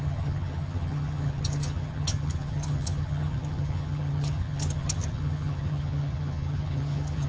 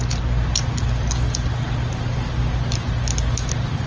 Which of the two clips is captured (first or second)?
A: second